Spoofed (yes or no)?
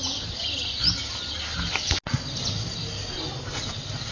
no